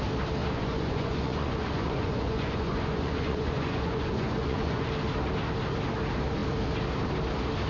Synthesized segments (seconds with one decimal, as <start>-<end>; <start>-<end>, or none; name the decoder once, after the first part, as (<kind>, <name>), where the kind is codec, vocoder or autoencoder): 0.4-4.9 (vocoder, Vocos)